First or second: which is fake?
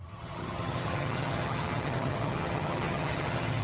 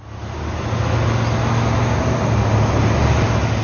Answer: first